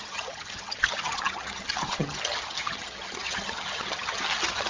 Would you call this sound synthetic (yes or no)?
yes